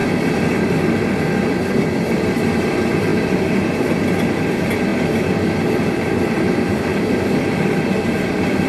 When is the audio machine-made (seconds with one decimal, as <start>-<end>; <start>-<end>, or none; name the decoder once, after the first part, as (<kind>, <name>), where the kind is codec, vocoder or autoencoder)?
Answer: 0.0-3.1 (vocoder, BigVGAN v2); 4.2-8.7